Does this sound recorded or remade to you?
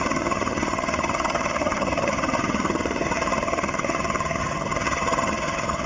remade